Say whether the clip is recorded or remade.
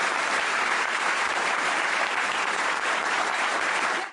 remade